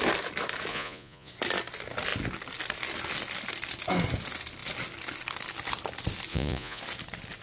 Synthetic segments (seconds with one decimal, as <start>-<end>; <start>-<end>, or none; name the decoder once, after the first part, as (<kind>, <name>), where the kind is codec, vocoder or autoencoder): 0.7-1.3 (vocoder, Vocos); 6.3-6.8